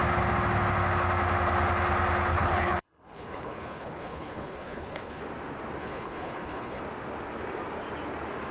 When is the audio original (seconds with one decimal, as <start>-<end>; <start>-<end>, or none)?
0.0-2.3; 5.2-5.8; 6.8-8.5